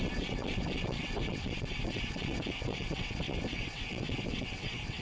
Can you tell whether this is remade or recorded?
remade